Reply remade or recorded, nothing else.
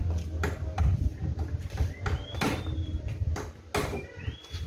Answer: recorded